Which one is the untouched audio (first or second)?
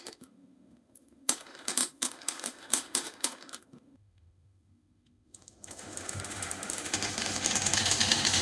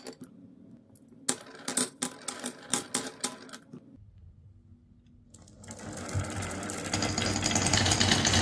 second